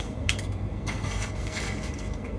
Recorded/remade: remade